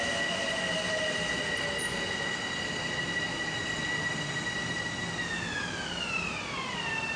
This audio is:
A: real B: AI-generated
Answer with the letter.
A